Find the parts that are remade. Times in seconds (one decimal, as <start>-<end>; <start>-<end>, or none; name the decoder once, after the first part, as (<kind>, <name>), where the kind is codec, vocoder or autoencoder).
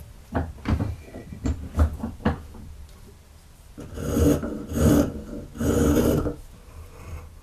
none